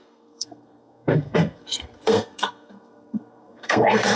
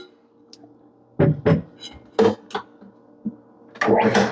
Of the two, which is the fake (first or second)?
first